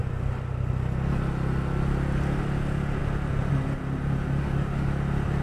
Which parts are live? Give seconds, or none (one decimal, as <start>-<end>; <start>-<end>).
0.0-4.4; 4.9-5.4